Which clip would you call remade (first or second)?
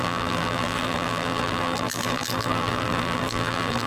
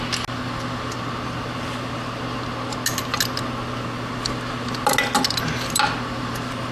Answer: first